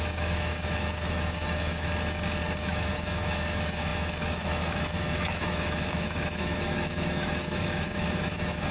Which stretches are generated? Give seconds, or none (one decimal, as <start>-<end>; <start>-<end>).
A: 0.0-1.9; 2.6-8.7